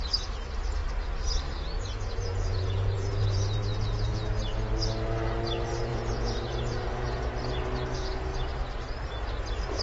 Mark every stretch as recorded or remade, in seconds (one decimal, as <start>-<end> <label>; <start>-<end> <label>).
0.0-2.3 recorded; 2.3-4.4 remade; 4.4-5.9 recorded; 5.9-7.3 remade; 7.3-9.8 recorded